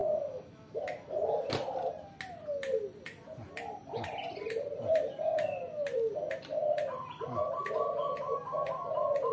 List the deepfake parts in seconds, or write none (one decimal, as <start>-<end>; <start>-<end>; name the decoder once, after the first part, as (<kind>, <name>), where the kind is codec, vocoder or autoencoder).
0.0-0.8 (autoencoder, DAC-VAE)